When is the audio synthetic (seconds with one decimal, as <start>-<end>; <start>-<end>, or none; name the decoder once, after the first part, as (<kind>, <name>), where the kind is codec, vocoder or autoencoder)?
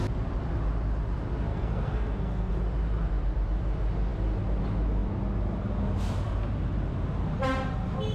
1.5-2.5 (codec, SNAC)